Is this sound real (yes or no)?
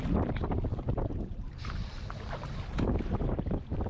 yes